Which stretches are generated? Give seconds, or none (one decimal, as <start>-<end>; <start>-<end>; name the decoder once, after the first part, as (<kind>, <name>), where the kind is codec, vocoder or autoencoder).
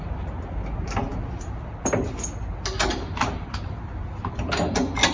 2.9-4.4 (vocoder, BigVGAN v2)